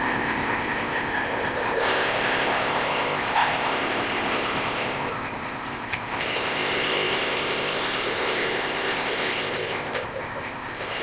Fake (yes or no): yes